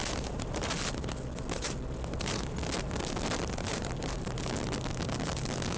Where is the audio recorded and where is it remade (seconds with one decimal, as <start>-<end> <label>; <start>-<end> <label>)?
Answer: 0.0-0.7 remade; 0.7-5.8 recorded